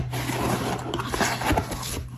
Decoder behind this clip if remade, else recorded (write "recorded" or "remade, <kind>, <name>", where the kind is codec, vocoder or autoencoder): recorded